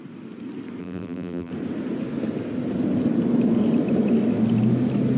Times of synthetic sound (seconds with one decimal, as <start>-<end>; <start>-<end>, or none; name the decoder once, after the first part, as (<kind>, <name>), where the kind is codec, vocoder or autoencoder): 0.8-1.5 (vocoder, BigVGAN v2)